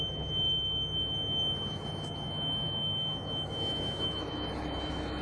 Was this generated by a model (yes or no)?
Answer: yes